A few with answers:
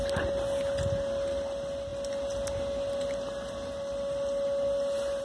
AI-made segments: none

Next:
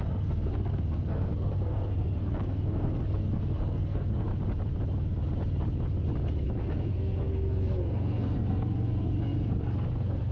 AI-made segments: 0.0-4.3 (codec, SNAC); 6.6-10.3

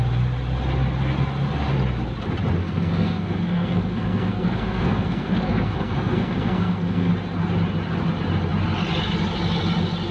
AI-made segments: 2.6-7.1 (codec, SNAC)

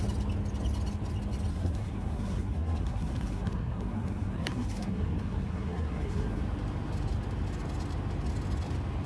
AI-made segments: 1.5-6.4 (codec, SNAC)

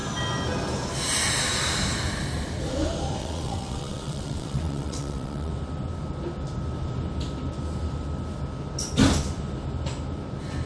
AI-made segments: 3.2-5.5 (vocoder, WaveNeXt)